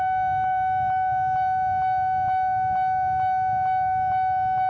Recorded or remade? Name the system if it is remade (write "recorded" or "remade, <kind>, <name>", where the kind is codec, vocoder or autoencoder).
recorded